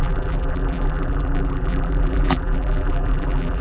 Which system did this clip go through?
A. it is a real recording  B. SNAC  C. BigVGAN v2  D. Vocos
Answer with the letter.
C